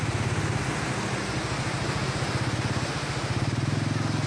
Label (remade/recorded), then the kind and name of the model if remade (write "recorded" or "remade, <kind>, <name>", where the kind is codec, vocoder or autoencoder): recorded